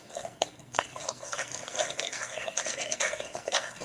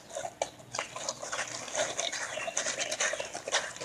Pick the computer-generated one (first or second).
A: first